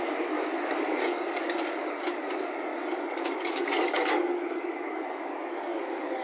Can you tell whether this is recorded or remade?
remade